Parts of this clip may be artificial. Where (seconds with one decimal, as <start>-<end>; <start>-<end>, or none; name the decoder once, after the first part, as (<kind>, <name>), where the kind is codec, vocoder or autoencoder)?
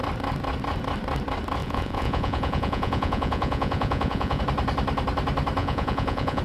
1.6-4.4 (vocoder, Vocos); 5.6-6.4